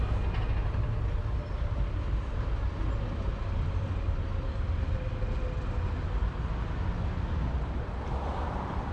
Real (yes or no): yes